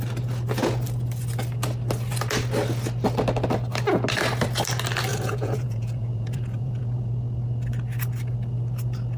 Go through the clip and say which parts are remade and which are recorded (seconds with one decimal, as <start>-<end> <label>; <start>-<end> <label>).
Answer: 0.0-5.1 recorded; 5.1-7.1 remade; 7.1-9.2 recorded